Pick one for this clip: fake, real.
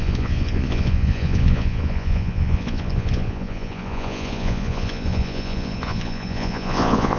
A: fake